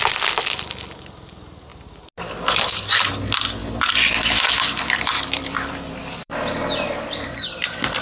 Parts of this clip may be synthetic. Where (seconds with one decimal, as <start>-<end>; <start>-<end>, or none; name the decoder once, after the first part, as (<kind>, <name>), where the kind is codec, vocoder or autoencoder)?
3.6-6.5 (vocoder, BigVGAN v2)